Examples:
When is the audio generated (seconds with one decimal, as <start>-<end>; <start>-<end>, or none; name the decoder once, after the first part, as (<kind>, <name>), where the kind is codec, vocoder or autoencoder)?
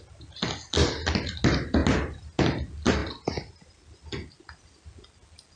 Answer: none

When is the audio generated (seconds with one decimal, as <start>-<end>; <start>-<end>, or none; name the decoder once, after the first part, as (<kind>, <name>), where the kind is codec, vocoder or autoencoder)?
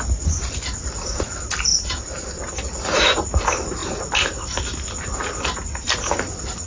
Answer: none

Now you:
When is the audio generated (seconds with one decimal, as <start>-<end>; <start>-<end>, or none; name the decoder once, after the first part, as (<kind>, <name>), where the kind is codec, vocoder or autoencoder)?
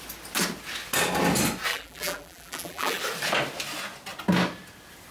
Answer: 1.7-3.0 (vocoder, BigVGAN v2)